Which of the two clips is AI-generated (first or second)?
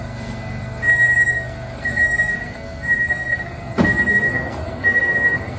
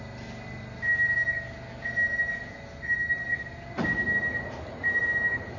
first